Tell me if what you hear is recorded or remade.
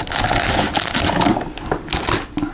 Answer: recorded